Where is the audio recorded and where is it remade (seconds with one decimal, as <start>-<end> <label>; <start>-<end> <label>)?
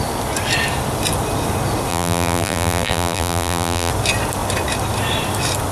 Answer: 0.0-1.9 recorded; 1.9-3.9 remade; 3.9-5.7 recorded